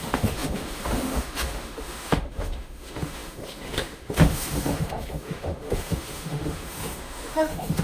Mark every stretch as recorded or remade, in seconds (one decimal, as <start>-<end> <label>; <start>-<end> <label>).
0.0-7.8 remade